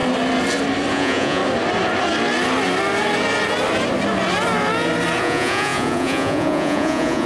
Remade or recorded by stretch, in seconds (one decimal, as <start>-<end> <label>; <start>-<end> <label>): 0.0-0.9 recorded; 0.9-1.4 remade; 1.4-5.2 recorded; 5.2-7.3 remade